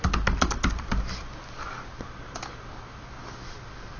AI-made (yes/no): no